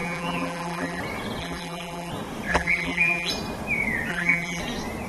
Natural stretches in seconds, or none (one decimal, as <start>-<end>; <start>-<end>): 1.0-1.4; 2.1-2.5; 3.3-4.1; 4.6-5.1